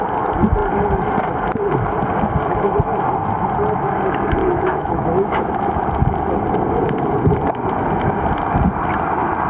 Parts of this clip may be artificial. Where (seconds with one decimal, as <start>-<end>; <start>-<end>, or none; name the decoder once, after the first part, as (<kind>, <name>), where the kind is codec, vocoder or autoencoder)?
4.4-5.5 (autoencoder, DAC-VAE)